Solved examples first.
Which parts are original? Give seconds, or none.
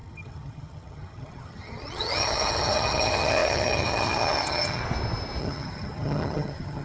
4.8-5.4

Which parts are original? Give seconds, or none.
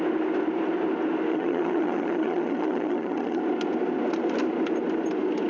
0.0-1.3; 3.4-5.5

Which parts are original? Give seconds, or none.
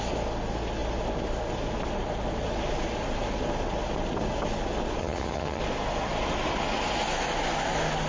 0.0-5.0; 5.6-8.1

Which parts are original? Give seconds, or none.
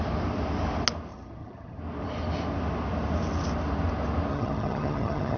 0.0-1.1; 1.8-4.3